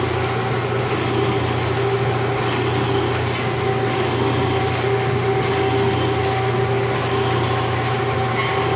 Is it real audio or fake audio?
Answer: real